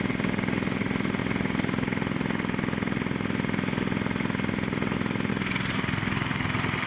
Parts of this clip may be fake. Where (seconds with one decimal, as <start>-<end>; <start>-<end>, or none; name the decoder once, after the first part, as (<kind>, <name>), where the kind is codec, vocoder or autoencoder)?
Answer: none